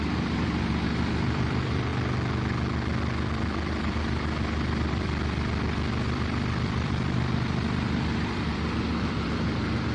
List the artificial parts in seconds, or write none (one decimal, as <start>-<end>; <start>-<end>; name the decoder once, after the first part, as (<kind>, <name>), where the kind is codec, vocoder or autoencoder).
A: 0.0-1.9 (vocoder, BigVGAN v2); 3.7-9.9